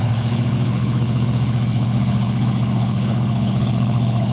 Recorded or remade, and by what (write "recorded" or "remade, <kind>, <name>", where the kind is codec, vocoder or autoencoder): remade, codec, HILCodec